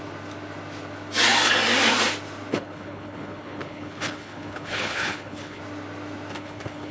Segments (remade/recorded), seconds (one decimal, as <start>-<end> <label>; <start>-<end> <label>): 0.0-2.5 recorded; 2.5-5.6 remade; 5.6-6.3 recorded; 6.3-6.9 remade